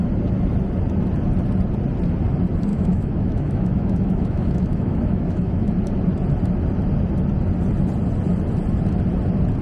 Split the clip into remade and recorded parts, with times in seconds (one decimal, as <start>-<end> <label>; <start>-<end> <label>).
0.0-2.7 recorded; 2.7-5.7 remade; 5.7-9.6 recorded